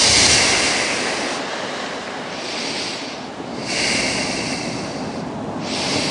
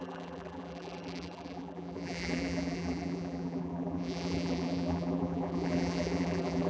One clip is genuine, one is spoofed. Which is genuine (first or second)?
first